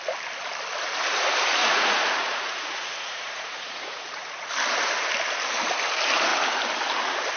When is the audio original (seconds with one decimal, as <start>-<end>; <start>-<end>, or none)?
0.0-1.6; 4.5-7.4